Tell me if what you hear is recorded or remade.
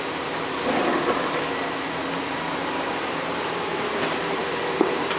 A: remade